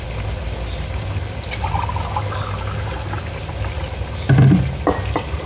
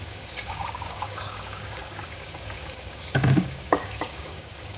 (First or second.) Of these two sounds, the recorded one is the first